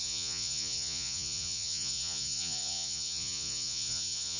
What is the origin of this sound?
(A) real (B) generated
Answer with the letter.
B